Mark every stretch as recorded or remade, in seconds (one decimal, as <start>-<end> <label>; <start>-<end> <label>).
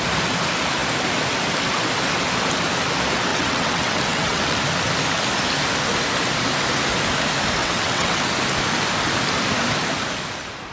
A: 0.0-3.3 recorded; 3.3-4.6 remade; 4.6-7.6 recorded; 7.6-8.2 remade; 8.2-10.7 recorded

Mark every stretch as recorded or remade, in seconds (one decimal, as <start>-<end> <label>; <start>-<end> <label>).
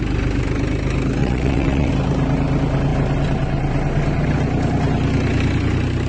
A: 0.0-1.2 recorded; 1.2-1.9 remade; 1.9-6.1 recorded